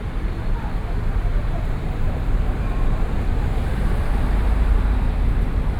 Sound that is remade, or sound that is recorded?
remade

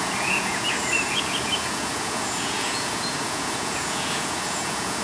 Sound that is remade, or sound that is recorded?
remade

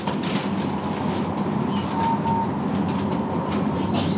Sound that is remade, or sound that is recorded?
recorded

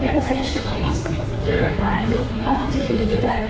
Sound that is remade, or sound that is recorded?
remade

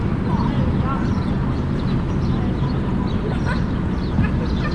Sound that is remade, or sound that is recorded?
recorded